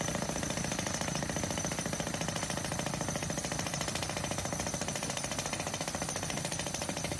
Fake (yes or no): no